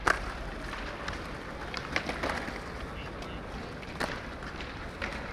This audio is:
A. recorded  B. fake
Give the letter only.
A